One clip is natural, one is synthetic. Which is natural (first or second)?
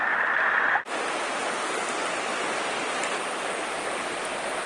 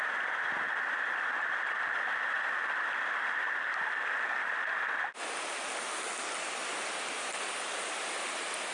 second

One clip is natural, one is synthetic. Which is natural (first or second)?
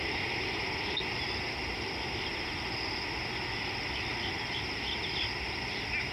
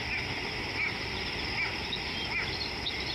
first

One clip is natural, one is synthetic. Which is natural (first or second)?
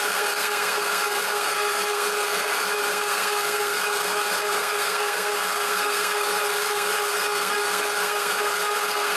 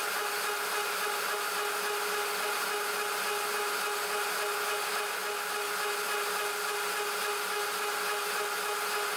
second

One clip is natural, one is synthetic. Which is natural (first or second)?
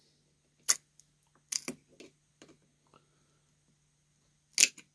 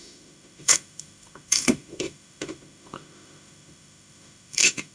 first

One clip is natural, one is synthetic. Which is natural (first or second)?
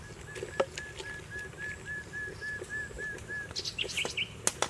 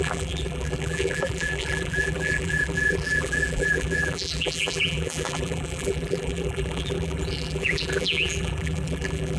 first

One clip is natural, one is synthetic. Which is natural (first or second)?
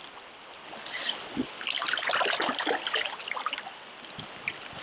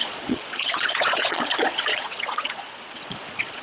first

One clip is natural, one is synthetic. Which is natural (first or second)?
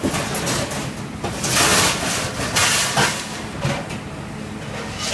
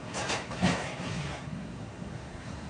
first